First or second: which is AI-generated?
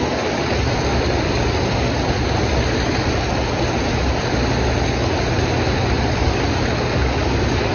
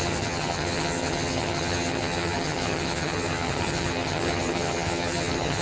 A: second